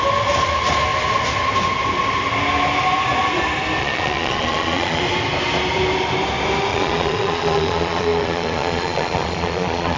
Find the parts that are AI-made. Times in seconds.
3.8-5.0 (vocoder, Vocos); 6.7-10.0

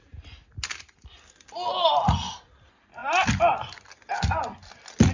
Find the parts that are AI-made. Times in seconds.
none

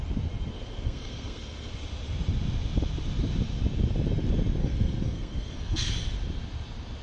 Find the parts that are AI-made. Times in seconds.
0.5-1.7 (codec, SNAC); 4.6-5.9

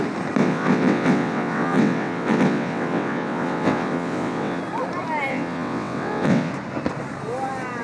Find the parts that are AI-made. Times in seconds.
0.4-4.6 (vocoder, WaveNeXt); 5.3-6.5

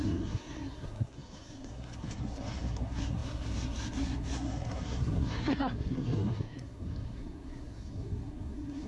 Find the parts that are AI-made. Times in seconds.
0.0-8.9 (codec, SNAC)

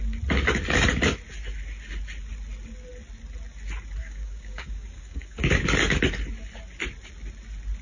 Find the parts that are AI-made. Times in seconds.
4.0-5.6 (codec, DAC)

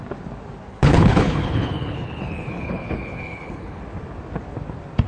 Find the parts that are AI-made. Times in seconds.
0.7-3.8 (codec, HILCodec)

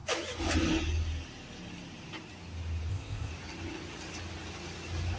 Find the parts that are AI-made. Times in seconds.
2.9-3.3 (codec, ZipCodec)